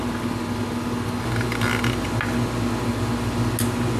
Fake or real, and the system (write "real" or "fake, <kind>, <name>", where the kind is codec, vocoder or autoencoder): real